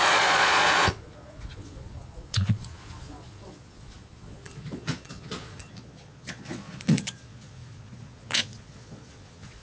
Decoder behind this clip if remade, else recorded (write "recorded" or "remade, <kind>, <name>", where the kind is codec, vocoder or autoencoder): remade, vocoder, Vocos